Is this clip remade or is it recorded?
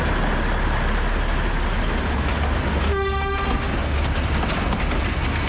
recorded